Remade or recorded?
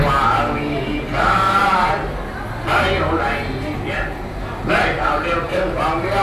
recorded